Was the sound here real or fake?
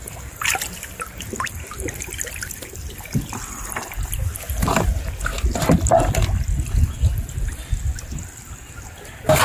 real